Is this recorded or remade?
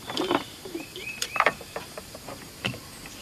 remade